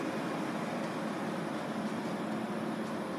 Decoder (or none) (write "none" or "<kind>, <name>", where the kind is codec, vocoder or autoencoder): none